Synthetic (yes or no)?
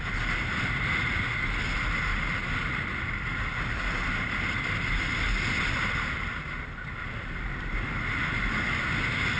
no